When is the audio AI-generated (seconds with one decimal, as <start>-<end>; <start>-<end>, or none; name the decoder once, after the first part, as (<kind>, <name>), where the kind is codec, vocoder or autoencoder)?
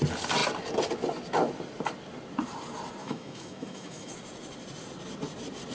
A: 3.0-4.1 (autoencoder, DAC-VAE)